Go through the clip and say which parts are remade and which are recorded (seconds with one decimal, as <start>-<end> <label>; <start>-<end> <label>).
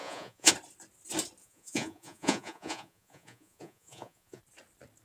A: 0.0-0.5 remade; 0.5-1.4 recorded; 1.4-4.4 remade; 4.4-5.0 recorded